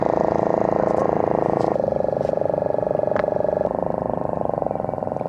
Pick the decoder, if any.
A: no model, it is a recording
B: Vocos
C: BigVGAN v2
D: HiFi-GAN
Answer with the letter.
A